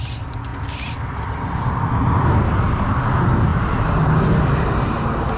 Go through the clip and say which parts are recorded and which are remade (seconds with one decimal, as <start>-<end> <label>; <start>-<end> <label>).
0.0-5.4 recorded